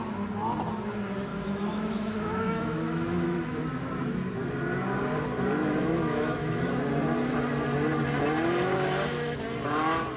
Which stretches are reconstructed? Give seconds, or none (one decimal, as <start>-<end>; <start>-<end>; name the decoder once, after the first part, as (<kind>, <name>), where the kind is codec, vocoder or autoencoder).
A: 1.3-3.6 (autoencoder, DAC-VAE); 5.8-6.7; 8.7-9.4